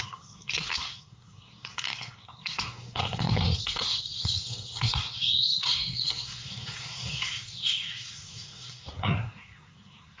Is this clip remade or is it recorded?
remade